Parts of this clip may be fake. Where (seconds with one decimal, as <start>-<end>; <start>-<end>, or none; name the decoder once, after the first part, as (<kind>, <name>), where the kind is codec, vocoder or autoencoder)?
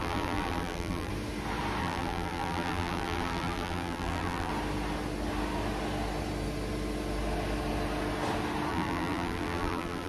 0.0-1.1 (vocoder, BigVGAN v2); 1.8-4.5; 8.7-10.1